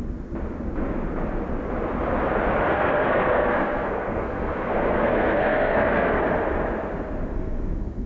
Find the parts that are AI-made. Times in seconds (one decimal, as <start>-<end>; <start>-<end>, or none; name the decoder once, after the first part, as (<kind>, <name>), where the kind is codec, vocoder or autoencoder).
2.7-6.2 (codec, SNAC); 7.3-8.1